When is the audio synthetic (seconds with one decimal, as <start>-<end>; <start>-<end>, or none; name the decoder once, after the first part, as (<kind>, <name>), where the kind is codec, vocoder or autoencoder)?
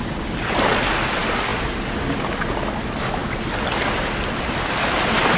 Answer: none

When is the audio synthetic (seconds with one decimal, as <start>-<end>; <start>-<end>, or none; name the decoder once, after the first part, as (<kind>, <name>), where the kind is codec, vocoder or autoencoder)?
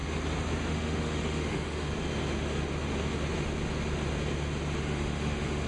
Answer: 0.7-1.9 (autoencoder, DAC-VAE); 4.8-5.7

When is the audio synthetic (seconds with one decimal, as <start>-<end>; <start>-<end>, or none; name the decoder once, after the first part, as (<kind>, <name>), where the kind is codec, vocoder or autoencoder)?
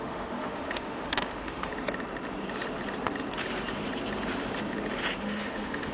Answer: 0.0-1.7 (autoencoder, DAC-VAE); 5.2-5.9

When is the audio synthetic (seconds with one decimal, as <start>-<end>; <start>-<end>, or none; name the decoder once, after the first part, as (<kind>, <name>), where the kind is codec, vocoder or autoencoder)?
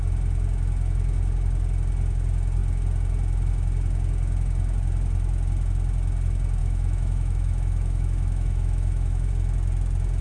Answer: 6.6-9.3 (autoencoder, DAC-VAE)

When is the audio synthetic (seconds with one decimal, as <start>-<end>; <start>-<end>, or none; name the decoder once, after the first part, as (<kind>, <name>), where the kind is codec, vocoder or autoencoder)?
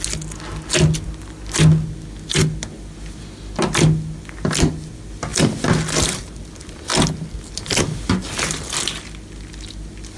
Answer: none